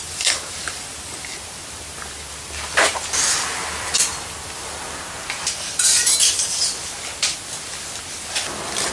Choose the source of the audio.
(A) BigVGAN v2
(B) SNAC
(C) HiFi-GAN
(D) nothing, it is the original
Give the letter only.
D